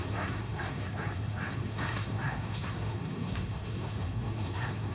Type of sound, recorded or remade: remade